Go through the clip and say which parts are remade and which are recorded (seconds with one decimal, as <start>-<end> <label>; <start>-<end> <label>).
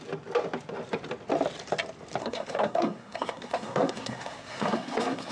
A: 0.0-2.2 recorded; 2.2-5.3 remade